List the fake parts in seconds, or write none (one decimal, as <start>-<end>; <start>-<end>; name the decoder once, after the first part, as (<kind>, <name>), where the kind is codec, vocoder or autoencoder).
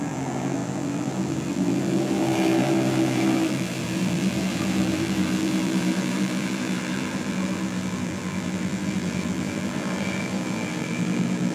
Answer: 0.0-11.5 (vocoder, BigVGAN v2)